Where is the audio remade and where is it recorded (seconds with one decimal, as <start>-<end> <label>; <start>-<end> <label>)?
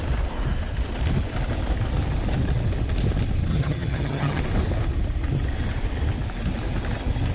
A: 0.0-3.5 recorded; 3.5-4.4 remade; 4.4-7.3 recorded